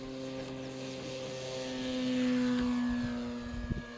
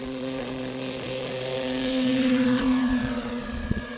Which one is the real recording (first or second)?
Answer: first